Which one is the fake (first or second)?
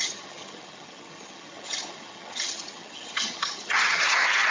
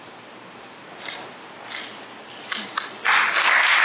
first